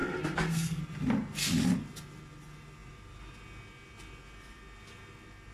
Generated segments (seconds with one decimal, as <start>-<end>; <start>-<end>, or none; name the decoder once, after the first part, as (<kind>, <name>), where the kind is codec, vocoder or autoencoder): 0.0-0.8 (codec, SNAC)